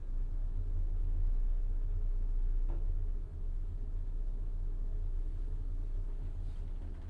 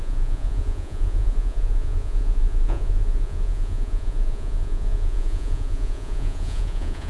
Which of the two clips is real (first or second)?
first